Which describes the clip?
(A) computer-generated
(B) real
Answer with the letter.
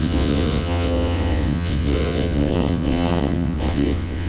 A